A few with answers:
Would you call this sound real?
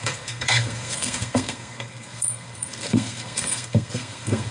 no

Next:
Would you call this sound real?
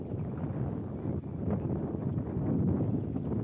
yes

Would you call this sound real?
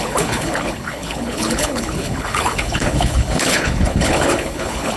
no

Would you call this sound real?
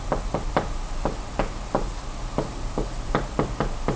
yes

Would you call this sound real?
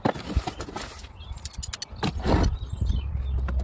yes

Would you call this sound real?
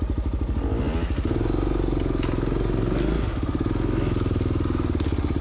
yes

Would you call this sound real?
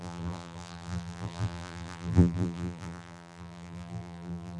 no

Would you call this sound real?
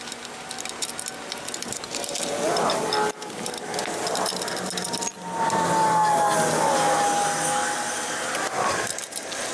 yes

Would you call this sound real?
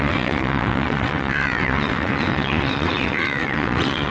no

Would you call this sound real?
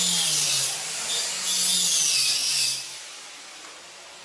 yes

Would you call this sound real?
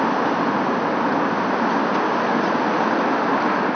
yes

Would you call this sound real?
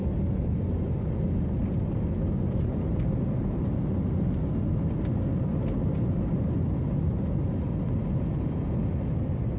yes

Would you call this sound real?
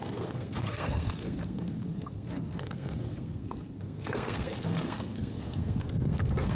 no